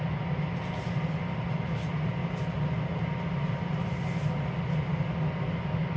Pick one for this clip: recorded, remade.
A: recorded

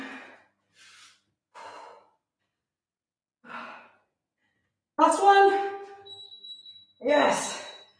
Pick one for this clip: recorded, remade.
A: recorded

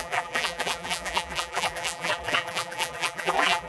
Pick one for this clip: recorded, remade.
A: remade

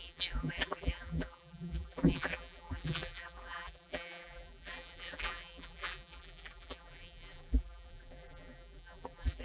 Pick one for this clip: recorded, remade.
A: remade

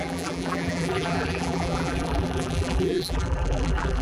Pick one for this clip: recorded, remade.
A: remade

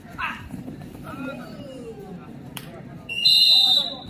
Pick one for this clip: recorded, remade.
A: remade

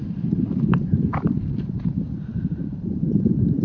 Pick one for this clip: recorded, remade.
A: remade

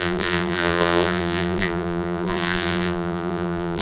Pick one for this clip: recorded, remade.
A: remade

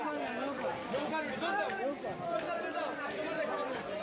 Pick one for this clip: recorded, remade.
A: recorded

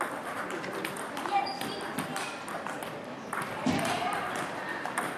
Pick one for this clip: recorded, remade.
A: remade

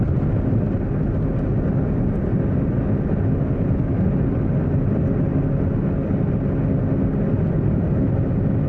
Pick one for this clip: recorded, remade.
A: recorded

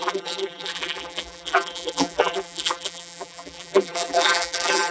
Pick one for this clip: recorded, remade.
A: remade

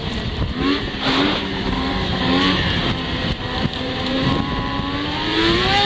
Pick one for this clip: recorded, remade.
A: remade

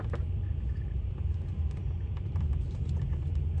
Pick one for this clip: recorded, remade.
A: remade